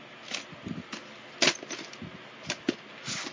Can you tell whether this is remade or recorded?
recorded